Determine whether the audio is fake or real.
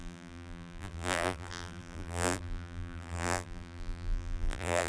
fake